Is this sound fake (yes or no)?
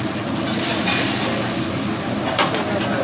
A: no